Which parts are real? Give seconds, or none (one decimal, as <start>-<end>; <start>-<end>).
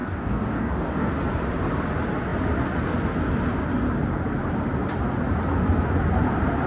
1.1-6.7